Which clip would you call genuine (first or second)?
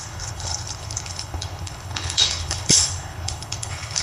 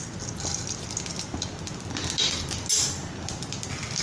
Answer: second